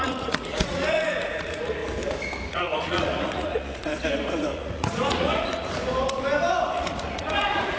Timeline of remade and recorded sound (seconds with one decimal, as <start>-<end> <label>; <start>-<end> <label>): 0.0-1.8 remade; 1.8-2.5 recorded; 2.5-3.9 remade; 3.9-4.4 recorded; 4.4-5.7 remade; 5.7-6.6 recorded; 6.6-7.8 remade